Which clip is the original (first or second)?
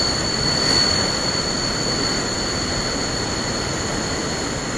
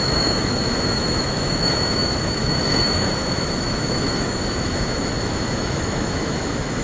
first